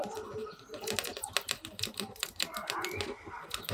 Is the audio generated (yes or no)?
no